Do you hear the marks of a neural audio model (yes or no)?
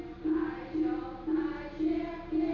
no